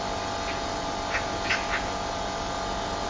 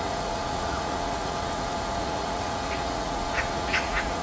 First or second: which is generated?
second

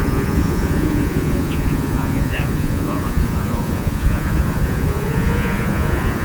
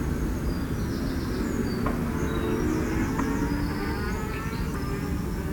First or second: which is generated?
first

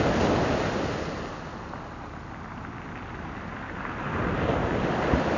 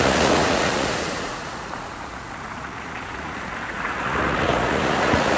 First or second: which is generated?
second